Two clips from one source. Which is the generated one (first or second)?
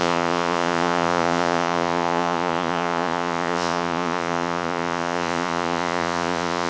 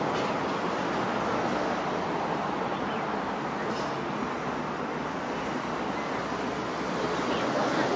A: first